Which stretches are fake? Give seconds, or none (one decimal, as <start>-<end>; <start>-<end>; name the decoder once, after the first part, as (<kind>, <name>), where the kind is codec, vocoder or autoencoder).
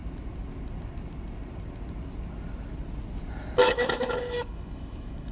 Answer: 3.6-5.3 (autoencoder, DAC-VAE)